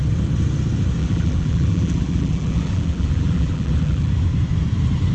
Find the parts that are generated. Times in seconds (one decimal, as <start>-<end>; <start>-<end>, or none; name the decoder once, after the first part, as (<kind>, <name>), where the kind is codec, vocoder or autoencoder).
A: 1.0-4.1 (vocoder, BigVGAN v2)